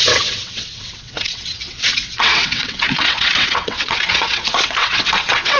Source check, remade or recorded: remade